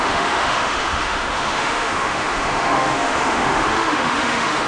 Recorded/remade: remade